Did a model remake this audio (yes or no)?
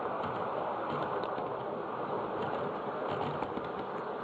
no